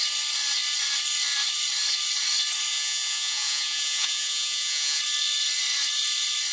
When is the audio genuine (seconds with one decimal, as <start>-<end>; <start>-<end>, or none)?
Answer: 0.0-2.7; 5.0-6.5